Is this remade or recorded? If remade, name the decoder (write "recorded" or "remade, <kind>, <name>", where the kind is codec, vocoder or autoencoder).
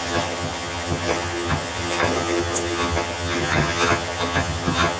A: remade, vocoder, HiFi-GAN